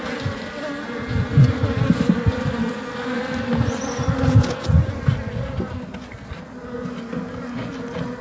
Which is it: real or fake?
real